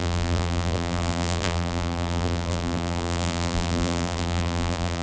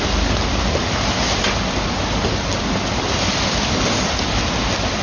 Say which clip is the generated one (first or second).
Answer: first